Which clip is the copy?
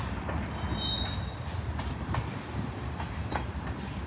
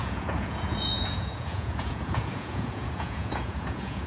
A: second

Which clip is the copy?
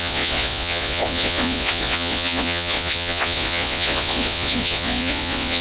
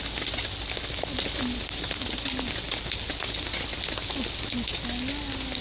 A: first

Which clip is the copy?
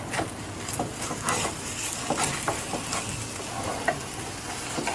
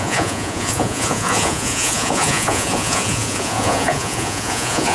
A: second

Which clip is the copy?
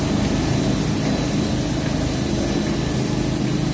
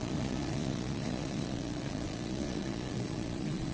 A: second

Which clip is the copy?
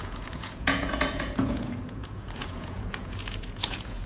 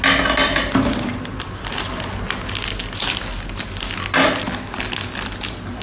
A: first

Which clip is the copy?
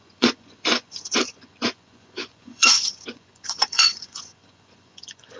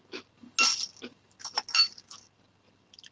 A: first